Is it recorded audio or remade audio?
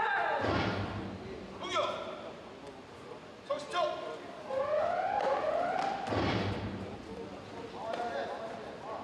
recorded